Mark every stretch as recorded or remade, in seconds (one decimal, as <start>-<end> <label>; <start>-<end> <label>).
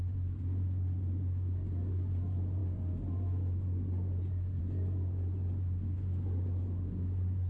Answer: 0.0-7.5 recorded